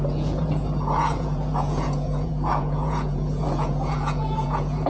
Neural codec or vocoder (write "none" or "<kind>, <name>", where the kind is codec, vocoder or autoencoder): vocoder, Vocos